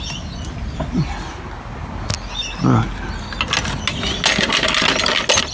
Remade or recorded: recorded